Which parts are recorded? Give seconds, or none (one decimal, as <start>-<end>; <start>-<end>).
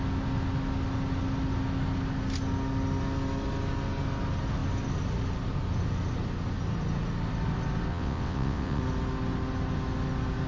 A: 0.0-7.9; 8.8-10.5